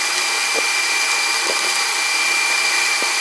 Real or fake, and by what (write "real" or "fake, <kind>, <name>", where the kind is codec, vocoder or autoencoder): fake, vocoder, BigVGAN v2